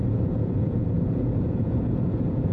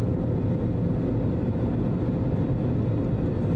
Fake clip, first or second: first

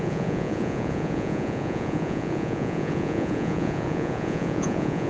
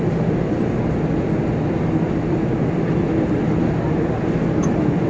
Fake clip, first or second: first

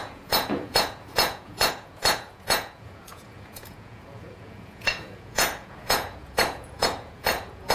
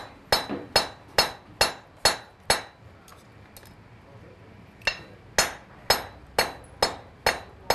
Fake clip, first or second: first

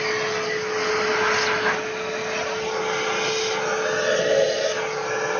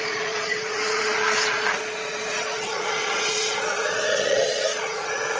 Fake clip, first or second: second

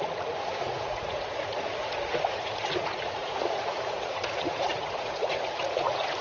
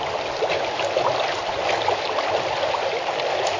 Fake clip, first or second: first